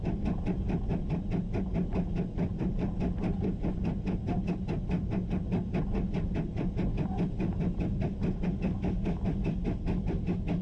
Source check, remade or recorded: recorded